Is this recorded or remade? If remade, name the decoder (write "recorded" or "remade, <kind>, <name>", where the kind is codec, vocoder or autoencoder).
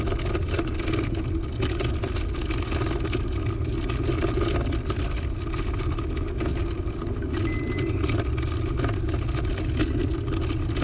recorded